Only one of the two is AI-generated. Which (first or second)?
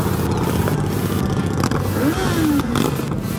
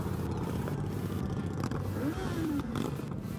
second